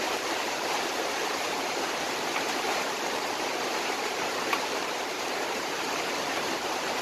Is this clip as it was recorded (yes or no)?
no